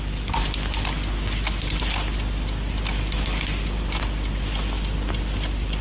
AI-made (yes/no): no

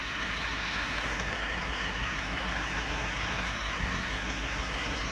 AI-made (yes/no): yes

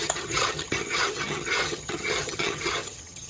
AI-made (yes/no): yes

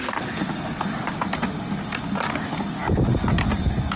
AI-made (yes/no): no